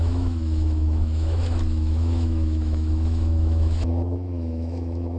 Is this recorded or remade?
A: remade